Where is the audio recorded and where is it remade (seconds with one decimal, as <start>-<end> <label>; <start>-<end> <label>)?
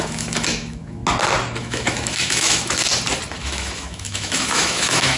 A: 0.0-1.0 remade; 1.0-1.6 recorded; 1.6-2.9 remade; 2.9-3.4 recorded; 3.4-5.2 remade